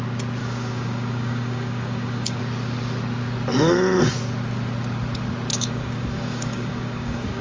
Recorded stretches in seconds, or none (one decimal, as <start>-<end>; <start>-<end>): 0.0-0.4; 2.4-5.5